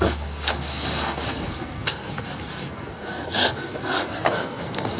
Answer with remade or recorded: remade